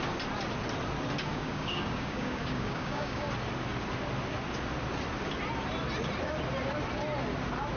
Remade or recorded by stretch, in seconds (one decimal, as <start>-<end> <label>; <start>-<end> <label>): 0.0-1.3 recorded; 1.3-3.3 remade; 3.3-7.8 recorded